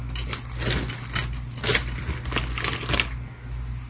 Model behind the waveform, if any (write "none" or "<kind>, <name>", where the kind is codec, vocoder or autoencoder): none